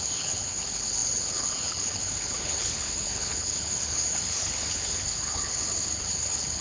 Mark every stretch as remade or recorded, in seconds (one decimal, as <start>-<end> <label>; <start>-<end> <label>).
0.0-6.6 remade